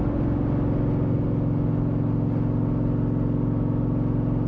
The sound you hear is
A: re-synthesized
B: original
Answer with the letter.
B